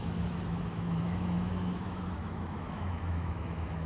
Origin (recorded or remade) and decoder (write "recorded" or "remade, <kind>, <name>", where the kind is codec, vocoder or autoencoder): remade, autoencoder, DAC-VAE